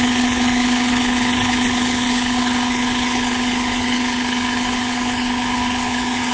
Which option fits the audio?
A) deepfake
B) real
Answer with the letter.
A